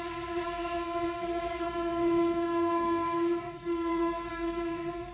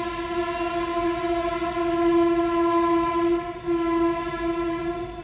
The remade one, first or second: first